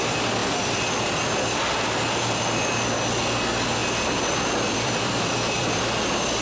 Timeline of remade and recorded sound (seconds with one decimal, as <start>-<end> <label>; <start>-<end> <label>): 0.0-0.4 recorded; 0.4-1.1 remade; 1.1-3.8 recorded; 3.8-5.8 remade; 5.8-6.4 recorded

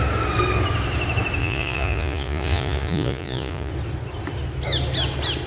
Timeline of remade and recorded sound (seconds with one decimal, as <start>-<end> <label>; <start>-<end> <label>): 0.0-1.4 recorded; 1.4-3.7 remade; 3.7-5.5 recorded

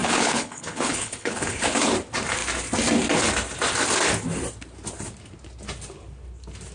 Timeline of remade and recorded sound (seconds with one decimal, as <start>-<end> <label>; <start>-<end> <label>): 0.0-1.9 remade; 1.9-6.7 recorded

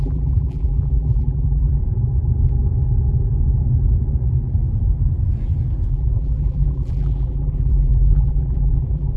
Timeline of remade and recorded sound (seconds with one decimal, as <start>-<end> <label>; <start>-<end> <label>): 0.0-1.8 remade; 1.8-5.9 recorded; 5.9-9.2 remade

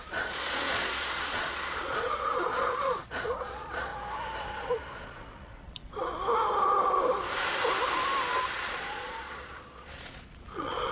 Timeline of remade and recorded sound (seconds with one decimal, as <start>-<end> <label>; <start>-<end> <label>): 0.0-3.9 remade; 3.9-4.4 recorded; 4.4-6.1 remade; 6.1-8.4 recorded; 8.4-10.9 remade